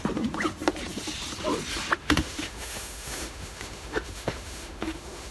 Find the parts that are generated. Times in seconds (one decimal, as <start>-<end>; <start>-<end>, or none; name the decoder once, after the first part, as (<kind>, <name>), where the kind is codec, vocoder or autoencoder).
2.0-5.3 (autoencoder, DAC-VAE)